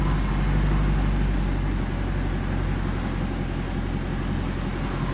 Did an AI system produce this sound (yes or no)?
no